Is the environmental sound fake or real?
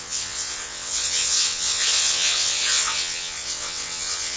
fake